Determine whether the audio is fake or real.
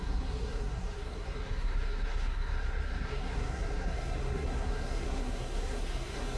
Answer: fake